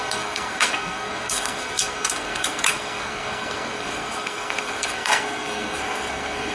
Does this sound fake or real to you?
fake